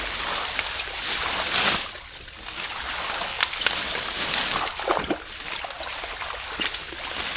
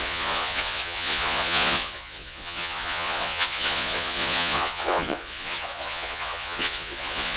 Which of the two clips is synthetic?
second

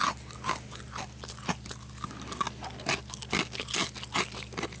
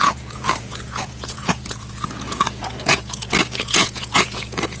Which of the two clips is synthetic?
second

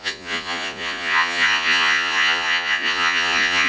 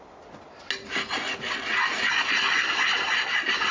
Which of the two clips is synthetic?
first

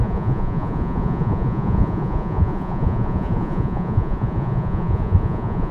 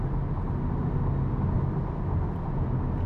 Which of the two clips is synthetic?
first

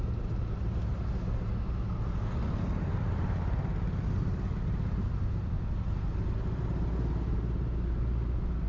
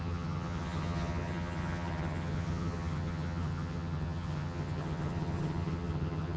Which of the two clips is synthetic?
second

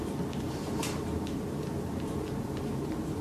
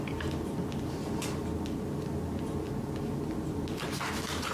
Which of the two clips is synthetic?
first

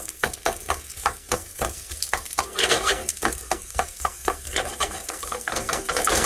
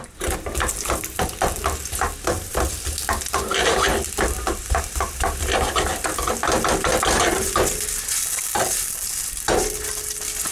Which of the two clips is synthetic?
first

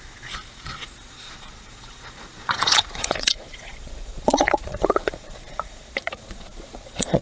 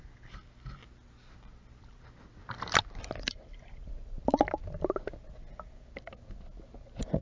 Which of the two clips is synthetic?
first